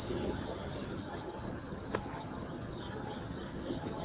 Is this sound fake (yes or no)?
yes